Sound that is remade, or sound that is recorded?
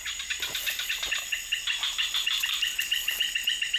recorded